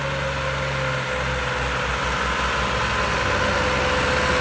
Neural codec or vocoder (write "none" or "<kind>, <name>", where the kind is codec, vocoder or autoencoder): none